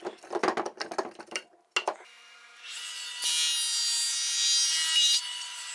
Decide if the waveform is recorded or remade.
recorded